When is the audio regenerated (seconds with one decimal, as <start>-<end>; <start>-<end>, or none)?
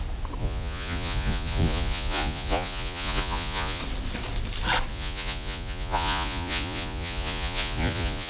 0.4-3.8; 4.9-8.3